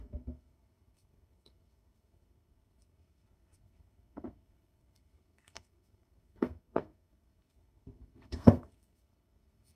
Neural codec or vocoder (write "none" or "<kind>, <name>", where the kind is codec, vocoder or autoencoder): codec, SNAC